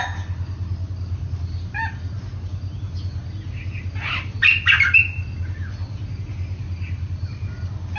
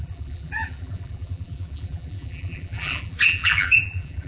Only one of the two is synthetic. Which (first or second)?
second